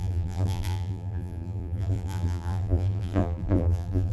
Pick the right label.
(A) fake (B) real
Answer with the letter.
A